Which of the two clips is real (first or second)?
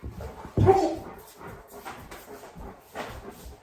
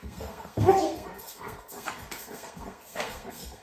first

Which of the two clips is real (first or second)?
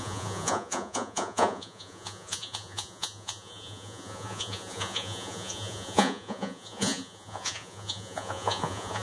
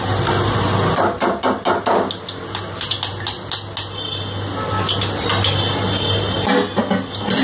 second